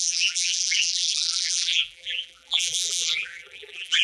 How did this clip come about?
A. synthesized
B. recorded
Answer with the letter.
A